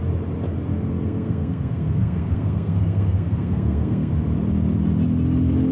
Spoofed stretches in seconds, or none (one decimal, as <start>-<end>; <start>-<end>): 0.7-4.1